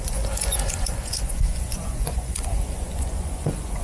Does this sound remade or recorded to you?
remade